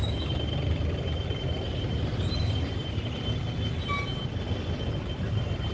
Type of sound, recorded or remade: recorded